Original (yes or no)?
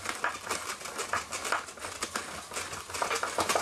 yes